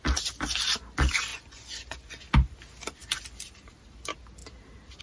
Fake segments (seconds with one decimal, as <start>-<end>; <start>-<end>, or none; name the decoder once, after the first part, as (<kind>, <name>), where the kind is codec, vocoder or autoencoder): 1.3-2.2 (vocoder, Vocos)